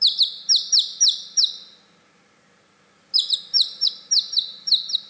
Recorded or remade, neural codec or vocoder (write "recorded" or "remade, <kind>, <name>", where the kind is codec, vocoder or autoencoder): recorded